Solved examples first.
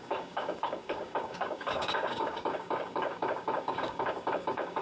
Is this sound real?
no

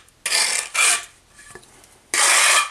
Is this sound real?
yes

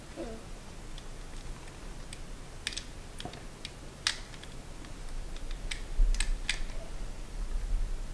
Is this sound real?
yes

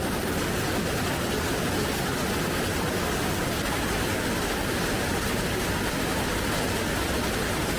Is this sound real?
yes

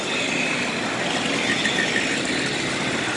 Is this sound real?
yes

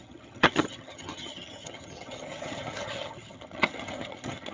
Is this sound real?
no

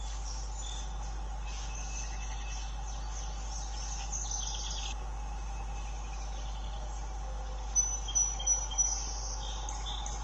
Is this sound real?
yes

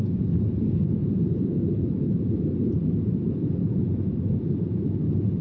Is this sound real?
no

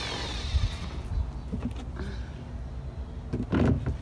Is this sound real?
yes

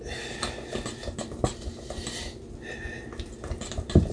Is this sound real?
yes